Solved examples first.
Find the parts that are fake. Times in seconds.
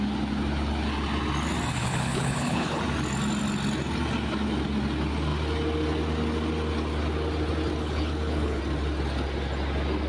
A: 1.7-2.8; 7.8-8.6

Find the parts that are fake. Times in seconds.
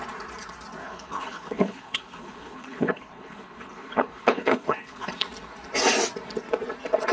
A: 0.8-5.1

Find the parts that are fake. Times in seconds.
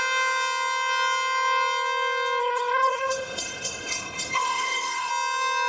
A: 2.4-5.1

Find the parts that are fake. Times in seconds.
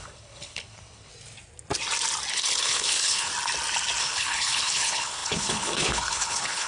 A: 0.0-1.1; 2.3-3.3; 4.0-6.7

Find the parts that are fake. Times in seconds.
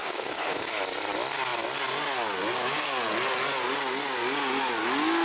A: 0.0-0.7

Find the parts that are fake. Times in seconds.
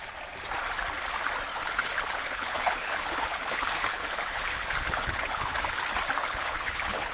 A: 1.5-5.8; 6.2-7.1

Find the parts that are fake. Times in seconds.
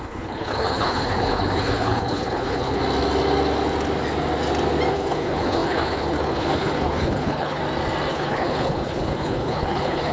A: 0.0-2.8; 4.9-7.6; 8.1-10.1